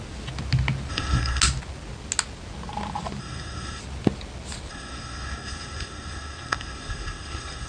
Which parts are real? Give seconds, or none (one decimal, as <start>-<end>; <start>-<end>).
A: 0.0-0.9; 1.4-3.2; 3.8-4.7